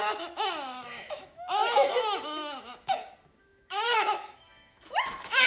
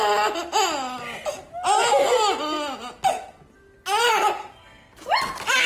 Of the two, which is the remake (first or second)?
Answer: first